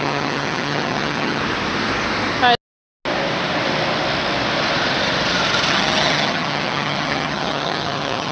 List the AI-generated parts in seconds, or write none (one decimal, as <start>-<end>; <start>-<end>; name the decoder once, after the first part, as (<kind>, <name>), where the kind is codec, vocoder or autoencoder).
0.0-1.4 (vocoder, HiFi-GAN); 5.7-8.3